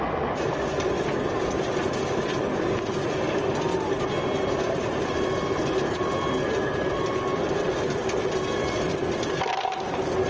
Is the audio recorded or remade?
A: recorded